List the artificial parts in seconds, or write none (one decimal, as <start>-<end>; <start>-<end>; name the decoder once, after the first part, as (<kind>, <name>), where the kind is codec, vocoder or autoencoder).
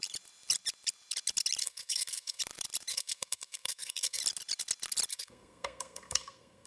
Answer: 1.6-2.4 (codec, SNAC); 2.9-4.2; 5.1-6.7